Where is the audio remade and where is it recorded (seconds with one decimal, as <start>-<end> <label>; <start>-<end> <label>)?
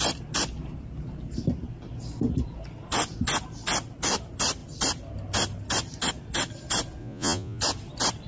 0.0-7.0 recorded; 7.0-7.6 remade; 7.6-8.3 recorded